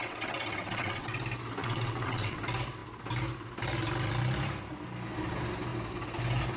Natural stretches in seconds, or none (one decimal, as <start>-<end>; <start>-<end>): 1.2-1.6; 2.4-6.6